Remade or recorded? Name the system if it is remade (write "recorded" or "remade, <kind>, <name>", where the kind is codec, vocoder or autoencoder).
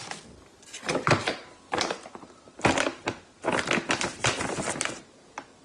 recorded